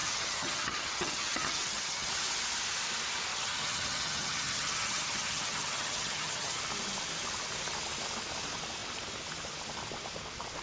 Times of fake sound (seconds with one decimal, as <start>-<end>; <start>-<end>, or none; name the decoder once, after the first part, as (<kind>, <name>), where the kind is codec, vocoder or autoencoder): 0.0-2.1 (vocoder, HiFi-GAN); 3.3-6.6